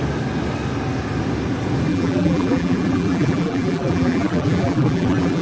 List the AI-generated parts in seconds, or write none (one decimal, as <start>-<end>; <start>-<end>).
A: 1.9-5.4

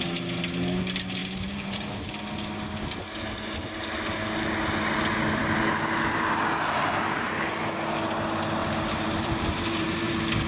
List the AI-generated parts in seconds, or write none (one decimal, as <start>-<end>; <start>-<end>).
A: 1.2-2.1; 8.6-10.1